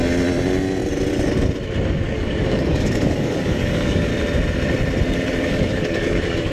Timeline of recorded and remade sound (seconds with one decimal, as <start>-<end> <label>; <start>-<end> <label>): 0.0-1.9 recorded; 1.9-4.1 remade; 4.1-5.4 recorded; 5.4-6.5 remade